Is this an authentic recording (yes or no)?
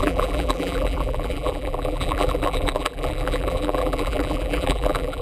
no